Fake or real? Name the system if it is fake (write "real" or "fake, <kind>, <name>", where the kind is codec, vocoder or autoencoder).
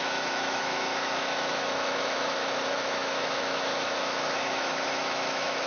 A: fake, autoencoder, DAC-VAE